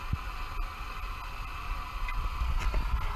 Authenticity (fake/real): real